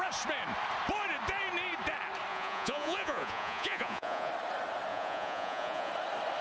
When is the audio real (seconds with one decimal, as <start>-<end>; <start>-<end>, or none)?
0.0-2.3; 4.3-4.9; 5.9-6.4